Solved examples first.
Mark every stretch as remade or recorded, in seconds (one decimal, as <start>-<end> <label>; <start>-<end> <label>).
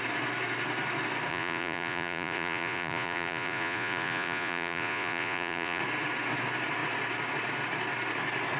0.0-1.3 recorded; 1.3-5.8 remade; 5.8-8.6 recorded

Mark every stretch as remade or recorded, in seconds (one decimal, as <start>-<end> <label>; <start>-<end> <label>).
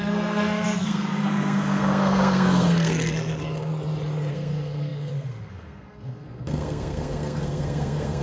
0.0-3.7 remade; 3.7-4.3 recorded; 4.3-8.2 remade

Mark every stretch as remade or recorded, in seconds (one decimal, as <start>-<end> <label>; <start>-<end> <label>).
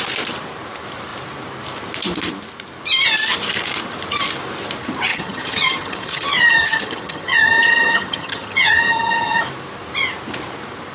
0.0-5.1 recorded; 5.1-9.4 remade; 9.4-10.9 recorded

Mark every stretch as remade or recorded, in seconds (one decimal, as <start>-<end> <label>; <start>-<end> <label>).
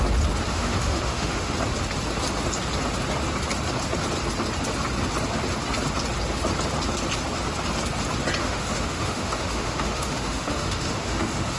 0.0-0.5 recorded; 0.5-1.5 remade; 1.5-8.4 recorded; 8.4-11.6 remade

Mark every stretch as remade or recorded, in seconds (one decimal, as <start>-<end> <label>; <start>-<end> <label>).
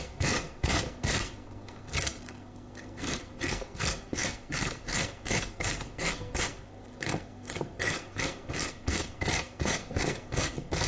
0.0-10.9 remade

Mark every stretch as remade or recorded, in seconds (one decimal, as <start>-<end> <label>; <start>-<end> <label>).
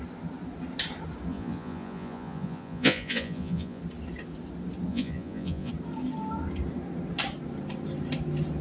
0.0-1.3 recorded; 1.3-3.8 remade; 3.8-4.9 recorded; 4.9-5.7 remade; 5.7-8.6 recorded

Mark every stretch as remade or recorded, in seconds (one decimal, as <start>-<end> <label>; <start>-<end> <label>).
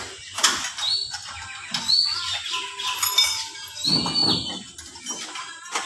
0.0-5.9 recorded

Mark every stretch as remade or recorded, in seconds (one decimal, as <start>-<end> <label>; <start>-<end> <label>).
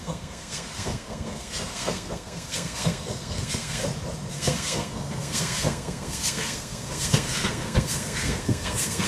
0.0-3.8 remade; 3.8-4.3 recorded; 4.3-9.1 remade